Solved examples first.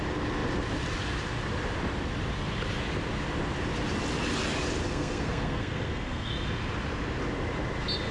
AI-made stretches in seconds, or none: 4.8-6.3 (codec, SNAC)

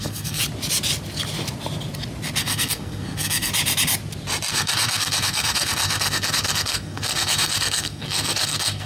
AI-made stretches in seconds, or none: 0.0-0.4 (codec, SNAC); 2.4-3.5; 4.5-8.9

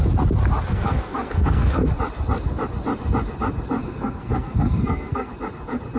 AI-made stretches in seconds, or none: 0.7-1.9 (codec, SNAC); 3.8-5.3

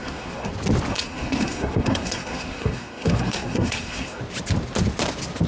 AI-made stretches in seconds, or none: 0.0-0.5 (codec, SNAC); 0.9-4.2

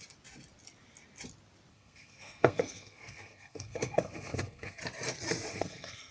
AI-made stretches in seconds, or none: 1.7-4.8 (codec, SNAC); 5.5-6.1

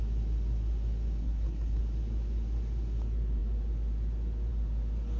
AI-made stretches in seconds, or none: 1.2-1.8 (codec, SNAC)